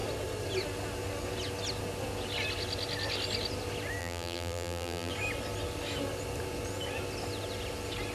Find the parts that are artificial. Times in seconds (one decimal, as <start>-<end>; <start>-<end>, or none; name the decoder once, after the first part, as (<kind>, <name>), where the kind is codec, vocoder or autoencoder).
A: 4.0-5.1 (vocoder, BigVGAN v2)